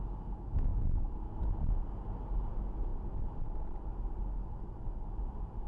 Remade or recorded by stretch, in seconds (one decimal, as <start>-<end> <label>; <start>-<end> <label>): 0.0-2.9 recorded; 2.9-5.2 remade; 5.2-5.7 recorded

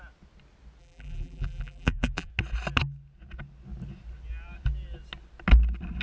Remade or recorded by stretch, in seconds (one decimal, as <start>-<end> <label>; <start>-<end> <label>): 0.0-0.8 recorded; 0.8-2.3 remade; 2.3-6.0 recorded

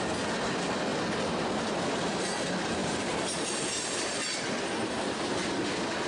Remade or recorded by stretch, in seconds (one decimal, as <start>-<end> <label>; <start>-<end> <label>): 0.0-2.8 recorded; 2.8-4.1 remade; 4.1-6.1 recorded